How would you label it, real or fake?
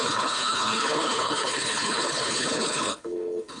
fake